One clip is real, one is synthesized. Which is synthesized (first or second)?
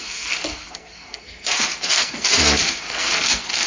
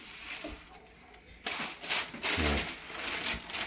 first